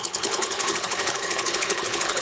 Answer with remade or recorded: remade